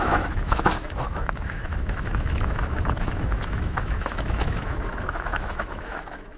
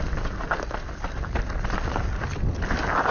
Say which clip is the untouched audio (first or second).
second